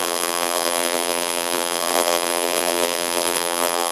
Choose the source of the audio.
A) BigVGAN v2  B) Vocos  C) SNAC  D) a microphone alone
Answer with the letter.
A